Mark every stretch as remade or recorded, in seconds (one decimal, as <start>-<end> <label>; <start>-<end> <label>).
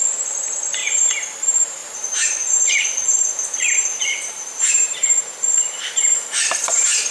0.0-0.8 remade; 0.8-1.4 recorded; 1.4-7.1 remade